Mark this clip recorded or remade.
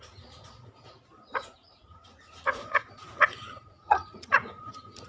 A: remade